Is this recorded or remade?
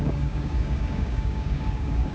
remade